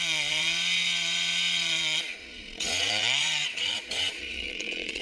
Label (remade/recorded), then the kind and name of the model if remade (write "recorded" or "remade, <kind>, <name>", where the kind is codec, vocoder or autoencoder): remade, vocoder, Vocos